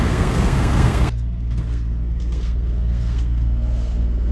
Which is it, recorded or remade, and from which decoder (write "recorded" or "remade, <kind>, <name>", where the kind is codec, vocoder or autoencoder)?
remade, codec, SNAC